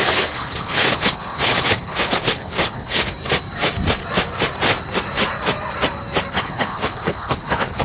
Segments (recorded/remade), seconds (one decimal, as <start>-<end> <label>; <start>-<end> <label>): 0.0-3.0 remade; 3.0-6.3 recorded; 6.3-7.8 remade